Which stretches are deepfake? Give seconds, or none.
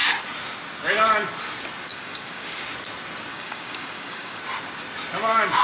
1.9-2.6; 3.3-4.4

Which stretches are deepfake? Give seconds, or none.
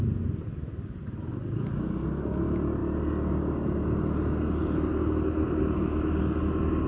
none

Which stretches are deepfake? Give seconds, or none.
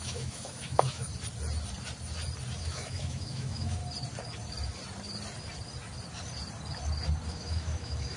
0.0-1.1; 2.6-3.8; 7.3-8.2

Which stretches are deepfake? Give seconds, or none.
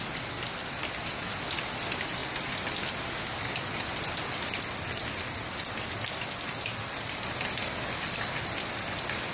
none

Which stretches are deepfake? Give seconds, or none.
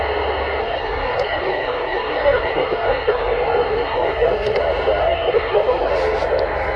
0.6-4.6; 5.0-5.9